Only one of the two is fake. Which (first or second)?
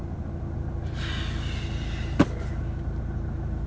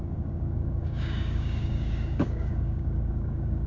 second